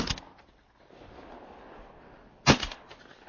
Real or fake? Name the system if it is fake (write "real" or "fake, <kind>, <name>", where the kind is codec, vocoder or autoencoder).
real